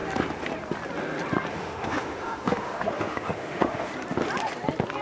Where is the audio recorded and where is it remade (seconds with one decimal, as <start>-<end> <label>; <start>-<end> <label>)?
0.0-1.5 recorded; 1.5-3.9 remade; 3.9-5.0 recorded